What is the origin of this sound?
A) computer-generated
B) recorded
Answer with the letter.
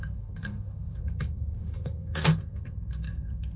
A